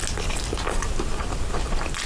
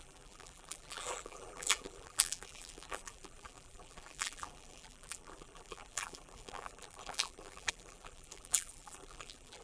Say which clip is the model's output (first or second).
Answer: second